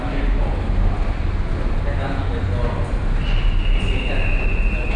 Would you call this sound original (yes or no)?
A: yes